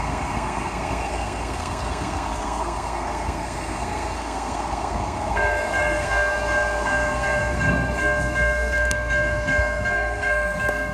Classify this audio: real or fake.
fake